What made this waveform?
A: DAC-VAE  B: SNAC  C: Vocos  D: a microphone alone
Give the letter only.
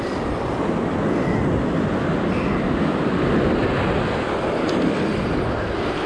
D